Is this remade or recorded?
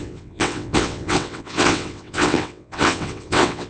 remade